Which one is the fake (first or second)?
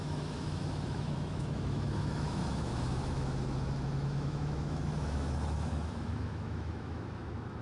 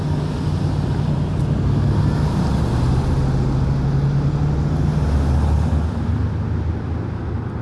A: first